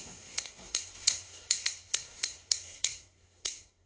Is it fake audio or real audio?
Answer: fake